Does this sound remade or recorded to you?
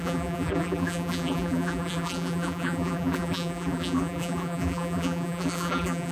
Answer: remade